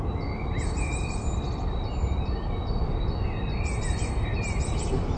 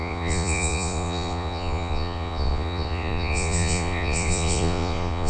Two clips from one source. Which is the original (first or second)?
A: first